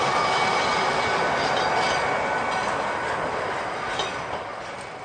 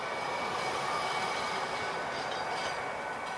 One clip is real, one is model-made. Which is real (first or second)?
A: first